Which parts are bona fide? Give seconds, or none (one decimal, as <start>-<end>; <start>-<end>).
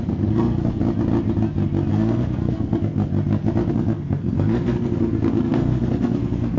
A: 0.8-1.9; 3.1-3.7